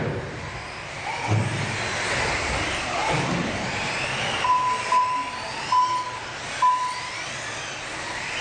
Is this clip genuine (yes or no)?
yes